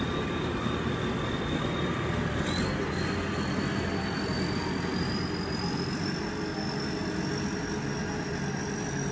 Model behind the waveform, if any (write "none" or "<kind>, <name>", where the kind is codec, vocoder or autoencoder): none